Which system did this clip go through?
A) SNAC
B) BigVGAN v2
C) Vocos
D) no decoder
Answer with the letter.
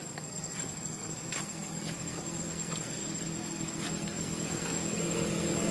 A